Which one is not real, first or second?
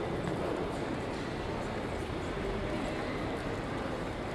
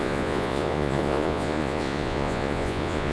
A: second